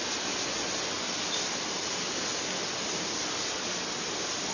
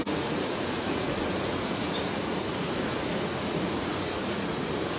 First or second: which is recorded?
first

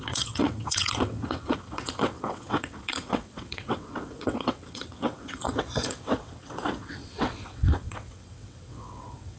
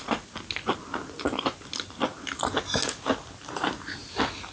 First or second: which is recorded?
second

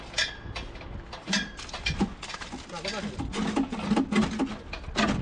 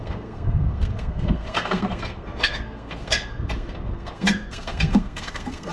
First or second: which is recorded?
first